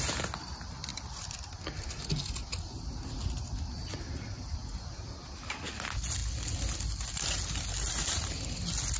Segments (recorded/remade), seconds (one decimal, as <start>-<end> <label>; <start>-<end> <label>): 0.0-9.0 recorded